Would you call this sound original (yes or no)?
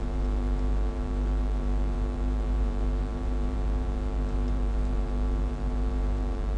no